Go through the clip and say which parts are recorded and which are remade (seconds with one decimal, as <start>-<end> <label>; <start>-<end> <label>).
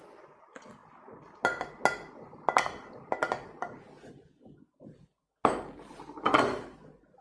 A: 0.0-7.2 recorded